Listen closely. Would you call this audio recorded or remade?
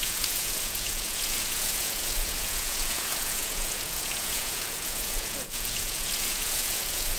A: remade